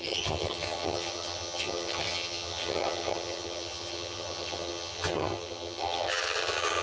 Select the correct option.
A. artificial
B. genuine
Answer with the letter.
A